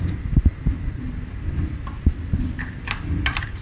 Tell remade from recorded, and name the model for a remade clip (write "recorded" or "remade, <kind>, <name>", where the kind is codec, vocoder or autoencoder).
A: recorded